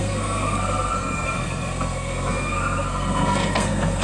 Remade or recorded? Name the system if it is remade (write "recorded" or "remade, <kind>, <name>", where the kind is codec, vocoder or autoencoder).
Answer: remade, codec, SNAC